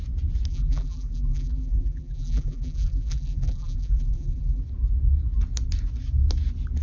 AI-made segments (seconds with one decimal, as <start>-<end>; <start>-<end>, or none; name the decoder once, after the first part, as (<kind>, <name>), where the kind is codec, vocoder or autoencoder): 0.5-4.6 (vocoder, BigVGAN v2)